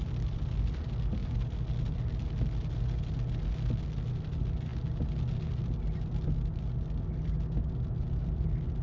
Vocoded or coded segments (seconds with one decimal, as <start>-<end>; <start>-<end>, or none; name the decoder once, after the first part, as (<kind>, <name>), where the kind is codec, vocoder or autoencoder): none